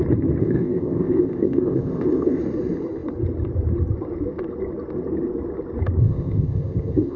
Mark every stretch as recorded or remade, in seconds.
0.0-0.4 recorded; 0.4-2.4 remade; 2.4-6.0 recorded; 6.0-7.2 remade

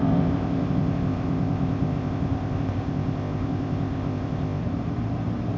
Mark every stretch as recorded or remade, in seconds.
0.0-4.6 remade; 4.6-5.6 recorded

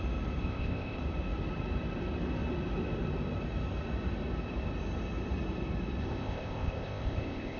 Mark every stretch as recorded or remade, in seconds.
0.0-0.4 recorded; 0.4-1.0 remade; 1.0-6.0 recorded; 6.0-7.6 remade

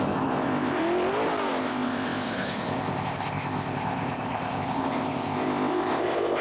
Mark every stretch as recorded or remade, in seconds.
0.0-0.8 remade; 0.8-1.6 recorded; 1.6-6.4 remade

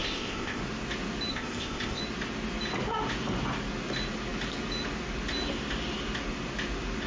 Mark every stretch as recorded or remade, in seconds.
0.0-0.6 remade; 0.6-1.3 recorded; 1.3-2.0 remade; 2.0-7.1 recorded

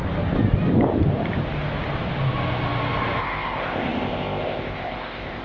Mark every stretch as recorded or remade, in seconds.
0.0-3.2 recorded; 3.2-5.4 remade

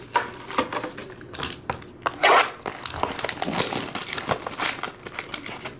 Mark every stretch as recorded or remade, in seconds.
0.0-5.8 recorded

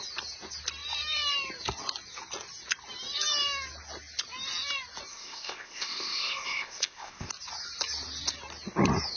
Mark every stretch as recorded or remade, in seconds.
0.0-5.1 recorded; 5.1-7.3 remade; 7.3-9.2 recorded